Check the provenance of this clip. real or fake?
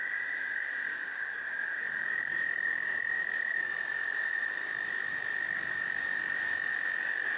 fake